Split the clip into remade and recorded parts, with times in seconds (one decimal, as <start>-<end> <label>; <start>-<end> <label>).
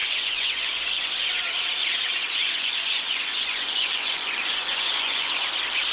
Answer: 0.0-1.5 remade; 1.5-2.1 recorded; 2.1-5.3 remade; 5.3-5.9 recorded